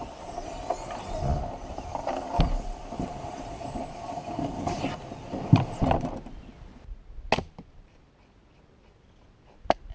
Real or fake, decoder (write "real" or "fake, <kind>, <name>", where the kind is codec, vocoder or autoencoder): real